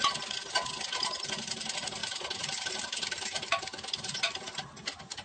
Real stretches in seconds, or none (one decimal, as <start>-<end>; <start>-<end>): 0.0-2.0; 3.6-5.2